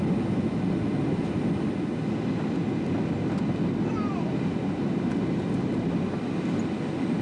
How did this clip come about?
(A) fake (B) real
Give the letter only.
B